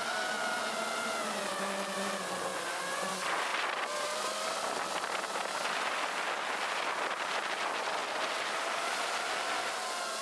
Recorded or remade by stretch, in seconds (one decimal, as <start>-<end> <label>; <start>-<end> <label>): 0.0-2.5 recorded; 2.5-3.1 remade; 3.1-10.2 recorded